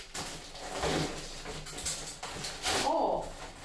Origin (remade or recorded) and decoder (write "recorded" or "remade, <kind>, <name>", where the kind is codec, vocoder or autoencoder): recorded